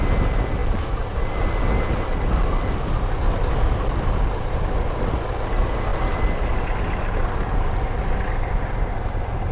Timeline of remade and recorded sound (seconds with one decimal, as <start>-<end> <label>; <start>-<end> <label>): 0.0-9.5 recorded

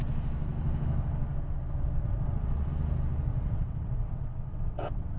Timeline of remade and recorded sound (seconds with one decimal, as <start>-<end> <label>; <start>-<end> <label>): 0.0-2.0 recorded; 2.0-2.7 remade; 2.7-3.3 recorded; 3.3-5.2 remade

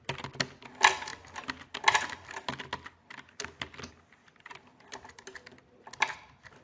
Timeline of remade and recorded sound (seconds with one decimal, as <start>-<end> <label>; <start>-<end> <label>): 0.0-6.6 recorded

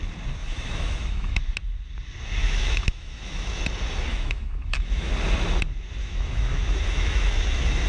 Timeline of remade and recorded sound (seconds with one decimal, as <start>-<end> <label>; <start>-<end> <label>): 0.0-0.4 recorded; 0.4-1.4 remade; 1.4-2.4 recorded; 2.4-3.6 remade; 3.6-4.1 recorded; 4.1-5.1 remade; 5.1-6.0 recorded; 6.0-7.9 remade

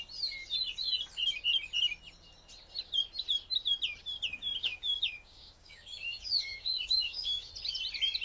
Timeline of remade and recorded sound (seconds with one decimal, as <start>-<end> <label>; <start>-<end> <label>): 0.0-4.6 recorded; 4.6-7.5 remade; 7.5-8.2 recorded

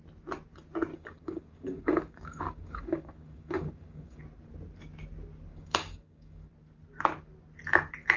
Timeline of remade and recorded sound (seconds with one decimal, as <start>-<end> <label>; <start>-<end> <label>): 0.0-0.9 recorded; 0.9-4.2 remade; 4.2-5.5 recorded; 5.5-6.5 remade; 6.5-8.2 recorded